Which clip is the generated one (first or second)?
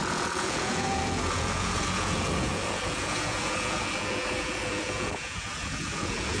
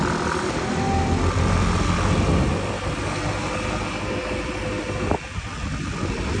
first